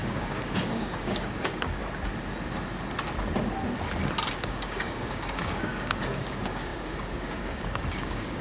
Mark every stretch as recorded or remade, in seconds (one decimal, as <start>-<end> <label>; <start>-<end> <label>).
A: 0.0-1.8 remade; 1.8-4.3 recorded; 4.3-8.4 remade